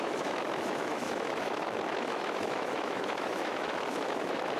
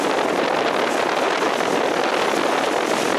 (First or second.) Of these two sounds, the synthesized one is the first